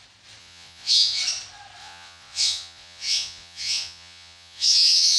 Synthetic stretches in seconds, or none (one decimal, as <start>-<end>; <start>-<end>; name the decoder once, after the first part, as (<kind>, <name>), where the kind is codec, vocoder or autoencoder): 0.4-1.2 (vocoder, Vocos); 1.8-5.2